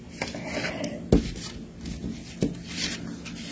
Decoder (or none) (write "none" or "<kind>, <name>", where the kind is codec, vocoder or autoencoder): none